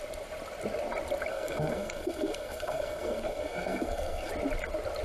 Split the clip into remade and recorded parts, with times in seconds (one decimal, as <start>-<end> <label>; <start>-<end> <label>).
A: 0.0-1.3 recorded; 1.3-4.3 remade; 4.3-5.0 recorded